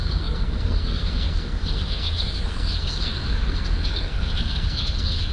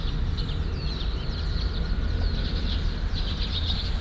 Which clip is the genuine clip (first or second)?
second